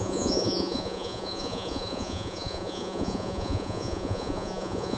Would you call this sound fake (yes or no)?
yes